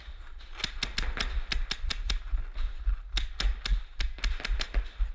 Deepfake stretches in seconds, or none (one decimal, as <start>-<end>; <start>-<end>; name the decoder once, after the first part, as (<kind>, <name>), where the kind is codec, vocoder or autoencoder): 1.9-2.8 (vocoder, BigVGAN v2)